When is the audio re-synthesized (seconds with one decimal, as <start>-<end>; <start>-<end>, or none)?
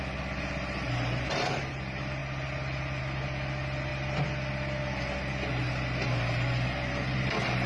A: none